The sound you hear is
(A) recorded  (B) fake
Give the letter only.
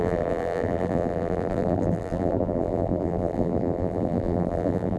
B